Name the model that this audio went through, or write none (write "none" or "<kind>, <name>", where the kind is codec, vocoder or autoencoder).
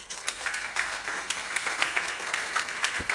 codec, SNAC